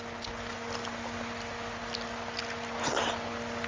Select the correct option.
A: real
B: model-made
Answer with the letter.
A